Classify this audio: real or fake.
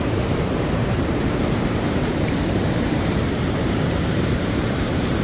fake